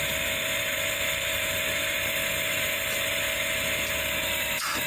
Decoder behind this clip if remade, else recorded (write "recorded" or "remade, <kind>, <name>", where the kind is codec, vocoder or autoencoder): remade, vocoder, BigVGAN v2